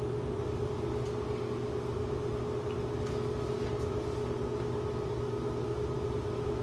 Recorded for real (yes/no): yes